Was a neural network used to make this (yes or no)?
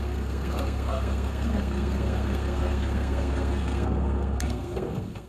yes